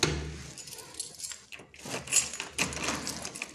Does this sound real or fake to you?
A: real